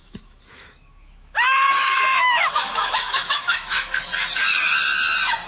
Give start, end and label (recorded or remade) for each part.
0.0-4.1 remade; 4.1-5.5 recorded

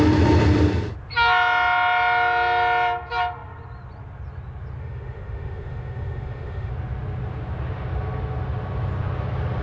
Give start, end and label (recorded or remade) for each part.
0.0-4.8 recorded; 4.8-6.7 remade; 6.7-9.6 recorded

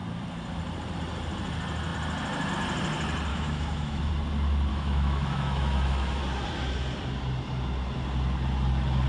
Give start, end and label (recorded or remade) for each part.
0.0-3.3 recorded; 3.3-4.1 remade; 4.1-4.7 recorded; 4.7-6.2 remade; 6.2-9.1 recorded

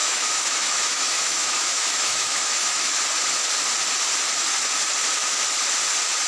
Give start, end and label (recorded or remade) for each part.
0.0-3.0 remade; 3.0-6.3 recorded

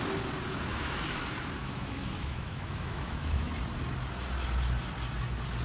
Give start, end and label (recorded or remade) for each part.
0.0-0.7 recorded; 0.7-1.2 remade; 1.2-1.6 recorded; 1.6-3.5 remade; 3.5-5.6 recorded

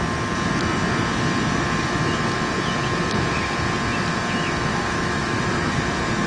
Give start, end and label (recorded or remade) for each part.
0.0-4.7 recorded; 4.7-5.8 remade; 5.8-6.3 recorded

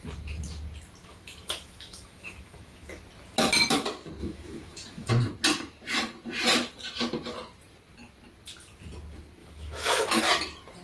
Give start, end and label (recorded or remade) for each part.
0.0-1.0 recorded; 1.0-3.0 remade; 3.0-4.2 recorded; 4.2-5.1 remade; 5.1-9.4 recorded; 9.4-10.2 remade; 10.2-10.8 recorded

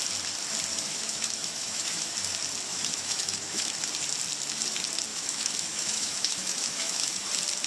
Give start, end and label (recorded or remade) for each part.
0.0-0.7 recorded; 0.7-2.1 remade; 2.1-2.7 recorded; 2.7-3.8 remade; 3.8-5.1 recorded; 5.1-7.3 remade; 7.3-7.7 recorded